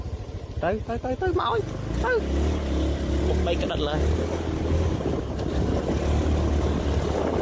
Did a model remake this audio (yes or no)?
no